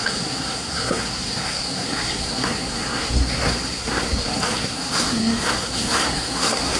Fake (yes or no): yes